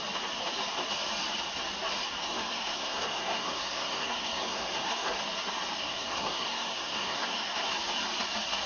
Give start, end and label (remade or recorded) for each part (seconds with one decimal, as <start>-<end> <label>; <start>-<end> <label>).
0.0-2.2 recorded; 2.2-5.2 remade; 5.2-5.8 recorded; 5.8-7.7 remade; 7.7-8.7 recorded

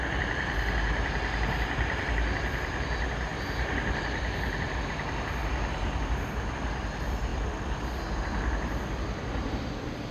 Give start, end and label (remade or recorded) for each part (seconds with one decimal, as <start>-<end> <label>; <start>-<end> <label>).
0.0-7.3 recorded; 7.3-7.8 remade; 7.8-10.1 recorded